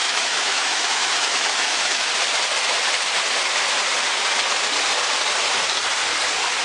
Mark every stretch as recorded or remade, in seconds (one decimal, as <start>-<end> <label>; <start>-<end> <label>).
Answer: 0.0-2.1 remade; 2.1-6.6 recorded